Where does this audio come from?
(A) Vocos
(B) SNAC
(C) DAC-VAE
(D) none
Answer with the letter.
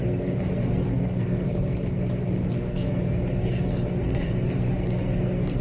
B